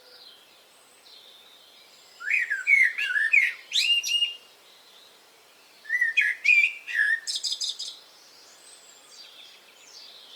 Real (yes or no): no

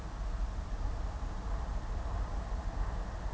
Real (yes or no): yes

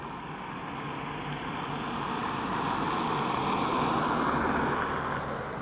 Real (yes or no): yes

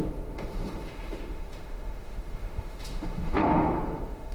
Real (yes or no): no